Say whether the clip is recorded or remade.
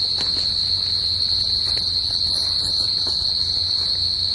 recorded